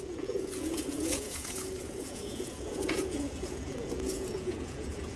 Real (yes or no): no